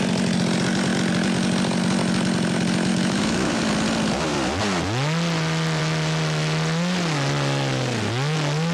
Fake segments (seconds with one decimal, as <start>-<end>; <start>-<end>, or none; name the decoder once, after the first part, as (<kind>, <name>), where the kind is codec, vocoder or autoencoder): 2.9-3.6 (autoencoder, DAC-VAE)